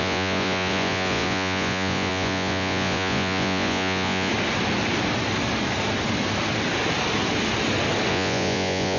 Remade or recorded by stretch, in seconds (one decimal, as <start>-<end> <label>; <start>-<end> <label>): 0.0-4.3 remade; 4.3-8.1 recorded; 8.1-9.0 remade

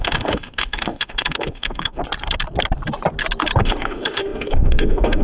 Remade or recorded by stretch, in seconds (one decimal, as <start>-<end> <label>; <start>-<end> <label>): 0.0-2.0 remade; 2.0-3.6 recorded; 3.6-5.2 remade

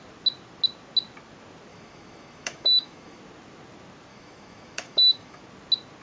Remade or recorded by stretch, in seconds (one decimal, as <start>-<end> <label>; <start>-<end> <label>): 0.0-1.7 recorded; 1.7-3.2 remade; 3.2-4.1 recorded; 4.1-5.4 remade; 5.4-6.0 recorded